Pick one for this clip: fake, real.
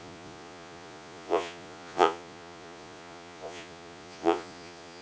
fake